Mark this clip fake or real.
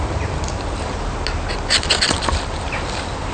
real